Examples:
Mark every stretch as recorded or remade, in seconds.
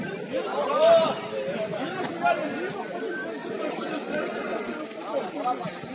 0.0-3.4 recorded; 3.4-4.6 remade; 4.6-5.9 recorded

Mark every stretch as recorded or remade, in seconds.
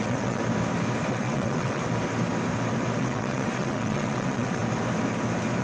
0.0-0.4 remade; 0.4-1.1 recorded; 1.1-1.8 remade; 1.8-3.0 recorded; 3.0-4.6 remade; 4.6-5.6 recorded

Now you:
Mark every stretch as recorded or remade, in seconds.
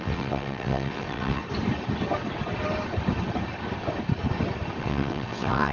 0.0-1.4 remade; 1.4-4.8 recorded; 4.8-5.7 remade